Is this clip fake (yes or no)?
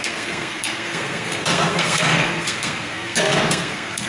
yes